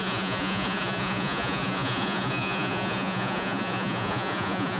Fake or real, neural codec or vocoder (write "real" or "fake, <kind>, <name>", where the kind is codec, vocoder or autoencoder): fake, vocoder, Vocos